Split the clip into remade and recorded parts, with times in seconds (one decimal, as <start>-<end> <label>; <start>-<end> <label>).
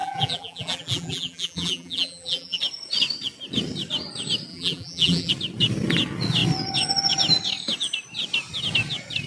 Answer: 0.0-2.6 remade; 2.6-4.5 recorded; 4.5-5.3 remade; 5.3-9.3 recorded